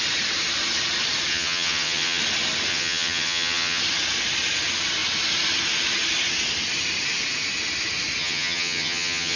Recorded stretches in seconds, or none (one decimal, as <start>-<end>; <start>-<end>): 0.0-1.3; 2.2-2.7; 3.8-8.2